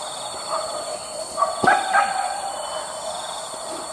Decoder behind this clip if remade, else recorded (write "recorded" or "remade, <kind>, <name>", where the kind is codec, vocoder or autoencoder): recorded